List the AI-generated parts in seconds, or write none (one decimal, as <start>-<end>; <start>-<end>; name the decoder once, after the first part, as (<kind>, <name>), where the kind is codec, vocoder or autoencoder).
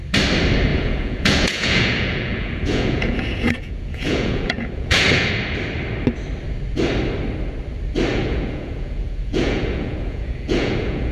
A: 0.7-5.3 (vocoder, Vocos); 8.1-11.1